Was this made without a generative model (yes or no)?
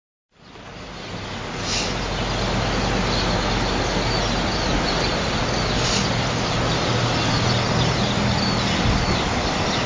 yes